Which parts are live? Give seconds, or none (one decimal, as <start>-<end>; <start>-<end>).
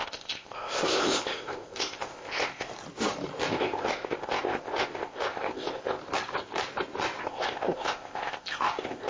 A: 2.7-3.5; 6.0-7.2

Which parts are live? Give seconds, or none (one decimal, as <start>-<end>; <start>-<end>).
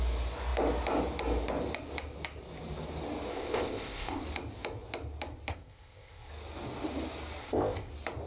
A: 0.0-3.3; 4.2-5.5; 6.3-7.4; 7.9-8.3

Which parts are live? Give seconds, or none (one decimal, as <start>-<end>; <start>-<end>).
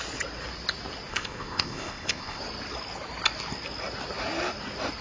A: 0.0-1.1; 2.4-5.0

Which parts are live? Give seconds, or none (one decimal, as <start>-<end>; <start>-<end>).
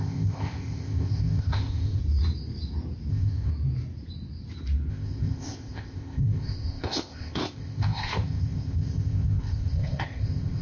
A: 2.0-3.1; 3.5-4.9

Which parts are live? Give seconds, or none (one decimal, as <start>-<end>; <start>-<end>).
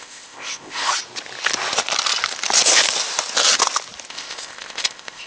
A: 0.9-4.1